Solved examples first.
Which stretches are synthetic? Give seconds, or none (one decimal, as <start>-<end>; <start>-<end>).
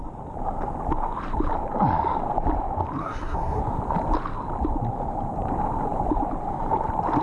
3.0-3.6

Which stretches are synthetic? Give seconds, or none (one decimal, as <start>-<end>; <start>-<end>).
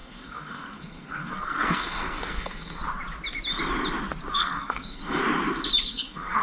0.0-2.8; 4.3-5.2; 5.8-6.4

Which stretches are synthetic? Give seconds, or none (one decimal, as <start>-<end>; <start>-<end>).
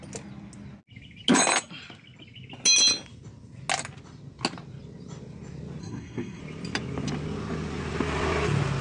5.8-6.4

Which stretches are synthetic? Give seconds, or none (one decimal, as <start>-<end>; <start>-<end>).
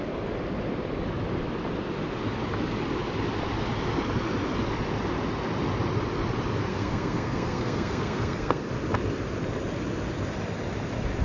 6.7-8.7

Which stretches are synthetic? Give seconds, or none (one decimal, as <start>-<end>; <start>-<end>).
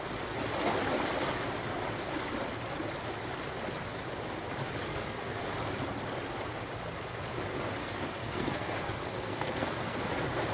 4.8-5.4; 7.8-10.0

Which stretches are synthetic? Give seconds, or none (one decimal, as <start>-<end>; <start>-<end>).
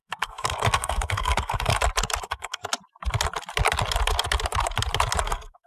0.0-1.7; 2.2-2.6; 5.2-5.7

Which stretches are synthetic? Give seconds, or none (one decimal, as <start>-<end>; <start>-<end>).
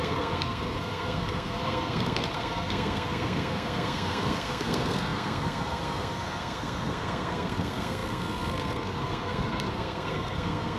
0.0-10.8